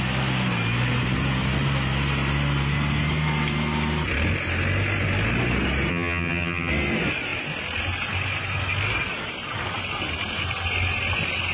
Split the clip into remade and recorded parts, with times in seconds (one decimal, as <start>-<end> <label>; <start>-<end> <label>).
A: 0.0-5.9 recorded; 5.9-6.7 remade; 6.7-11.5 recorded